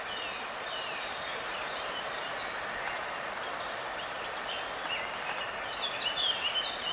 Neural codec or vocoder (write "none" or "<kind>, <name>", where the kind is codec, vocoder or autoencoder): none